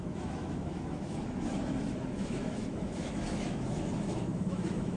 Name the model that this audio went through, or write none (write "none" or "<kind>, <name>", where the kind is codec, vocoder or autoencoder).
autoencoder, DAC-VAE